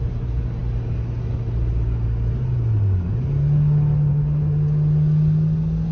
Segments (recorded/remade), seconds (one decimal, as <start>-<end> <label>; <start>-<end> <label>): 0.0-5.9 recorded